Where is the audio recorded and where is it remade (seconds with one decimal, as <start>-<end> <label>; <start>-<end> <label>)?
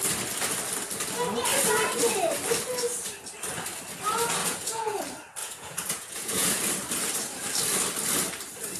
0.0-4.4 recorded; 4.4-5.0 remade; 5.0-5.4 recorded; 5.4-6.6 remade; 6.6-8.8 recorded